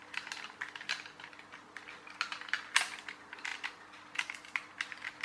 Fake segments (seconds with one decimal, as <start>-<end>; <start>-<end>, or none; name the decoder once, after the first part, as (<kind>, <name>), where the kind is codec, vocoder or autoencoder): none

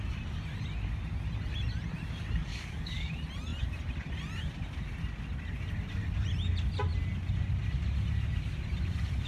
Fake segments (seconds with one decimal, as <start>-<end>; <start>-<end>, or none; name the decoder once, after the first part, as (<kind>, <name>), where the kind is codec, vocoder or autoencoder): 2.5-3.1 (codec, DAC)

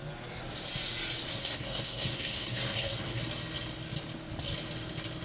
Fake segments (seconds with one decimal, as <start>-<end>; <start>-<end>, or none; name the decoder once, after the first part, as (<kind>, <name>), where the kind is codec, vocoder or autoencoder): 1.3-3.2 (codec, SNAC)